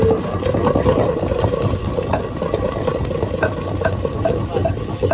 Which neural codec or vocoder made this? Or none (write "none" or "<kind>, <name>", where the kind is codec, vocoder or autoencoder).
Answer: none